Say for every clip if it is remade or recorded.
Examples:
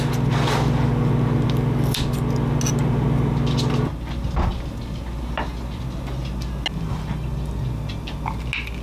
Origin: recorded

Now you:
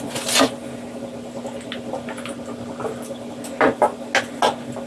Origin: recorded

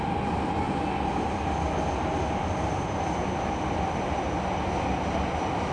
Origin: recorded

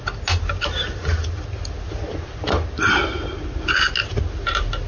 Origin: recorded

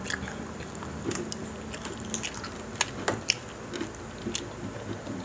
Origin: recorded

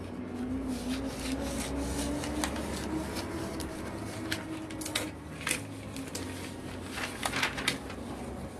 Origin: recorded